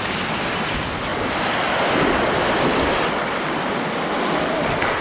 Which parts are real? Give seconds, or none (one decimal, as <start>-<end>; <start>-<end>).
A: 0.0-5.0